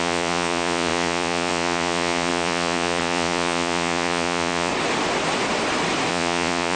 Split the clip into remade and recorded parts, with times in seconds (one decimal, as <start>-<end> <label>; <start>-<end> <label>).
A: 0.0-4.7 remade; 4.7-6.1 recorded; 6.1-6.8 remade